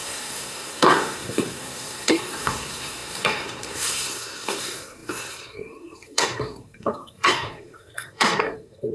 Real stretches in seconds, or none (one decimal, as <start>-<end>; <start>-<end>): none